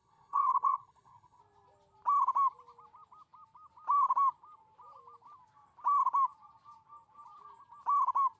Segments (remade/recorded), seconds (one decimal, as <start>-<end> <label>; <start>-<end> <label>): 0.0-1.4 remade; 1.4-8.4 recorded